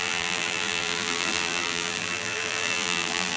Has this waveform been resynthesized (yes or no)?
yes